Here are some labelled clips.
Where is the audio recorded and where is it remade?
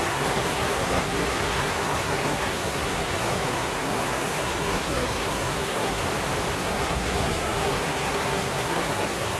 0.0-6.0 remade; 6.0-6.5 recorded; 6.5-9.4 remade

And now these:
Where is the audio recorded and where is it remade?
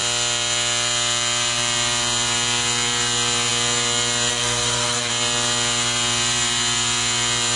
0.0-4.3 recorded; 4.3-5.1 remade; 5.1-7.6 recorded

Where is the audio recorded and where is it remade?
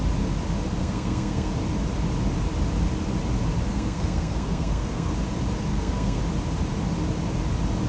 0.0-0.8 recorded; 0.8-1.5 remade; 1.5-3.7 recorded; 3.7-5.1 remade; 5.1-5.7 recorded; 5.7-6.2 remade; 6.2-7.9 recorded